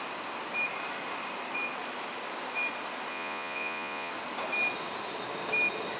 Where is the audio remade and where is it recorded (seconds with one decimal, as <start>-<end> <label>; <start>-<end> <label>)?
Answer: 0.0-3.1 recorded; 3.1-4.1 remade; 4.1-6.0 recorded